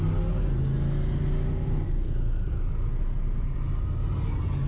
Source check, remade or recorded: recorded